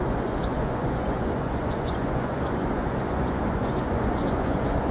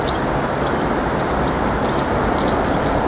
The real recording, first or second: second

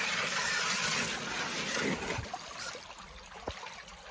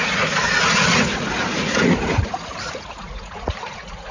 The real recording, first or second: first